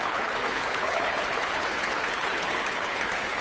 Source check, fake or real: fake